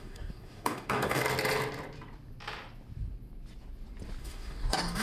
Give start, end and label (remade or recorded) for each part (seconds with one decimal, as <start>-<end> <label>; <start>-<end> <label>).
0.0-1.2 remade; 1.2-4.2 recorded; 4.2-5.0 remade